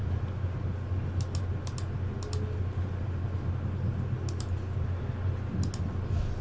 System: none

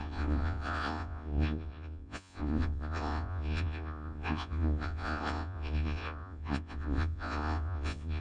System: vocoder, Vocos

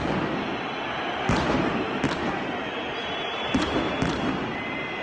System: none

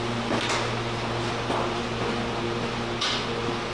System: none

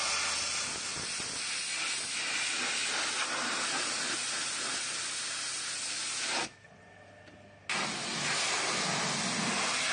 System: none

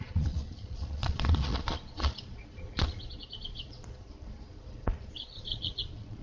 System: vocoder, Vocos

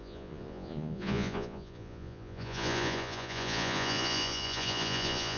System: vocoder, Vocos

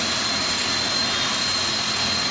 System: none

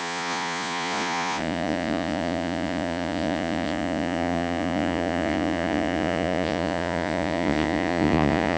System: vocoder, Vocos